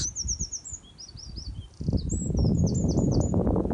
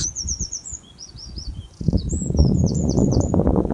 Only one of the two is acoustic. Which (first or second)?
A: first